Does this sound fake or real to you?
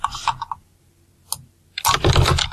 real